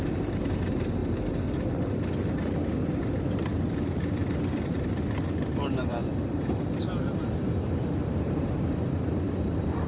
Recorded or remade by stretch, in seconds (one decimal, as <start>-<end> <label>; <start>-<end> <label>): 0.0-1.0 remade; 1.0-3.5 recorded; 3.5-9.9 remade